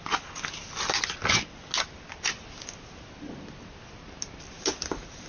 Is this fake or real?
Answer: real